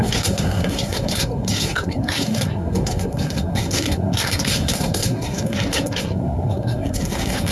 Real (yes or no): no